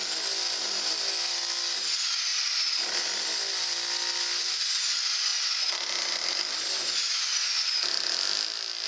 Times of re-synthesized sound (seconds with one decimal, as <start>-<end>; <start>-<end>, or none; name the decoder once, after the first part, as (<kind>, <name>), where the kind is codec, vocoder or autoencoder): none